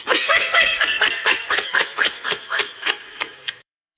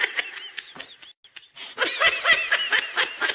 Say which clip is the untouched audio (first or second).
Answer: second